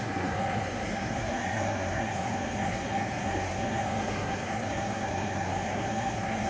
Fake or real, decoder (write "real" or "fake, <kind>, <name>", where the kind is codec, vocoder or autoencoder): fake, codec, SNAC